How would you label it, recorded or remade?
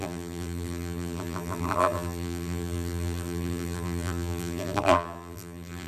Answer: remade